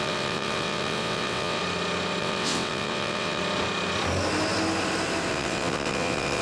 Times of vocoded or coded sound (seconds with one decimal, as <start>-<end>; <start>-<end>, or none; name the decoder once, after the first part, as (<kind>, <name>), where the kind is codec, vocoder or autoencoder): 0.0-1.6 (vocoder, WaveNeXt); 2.2-3.4; 5.3-6.4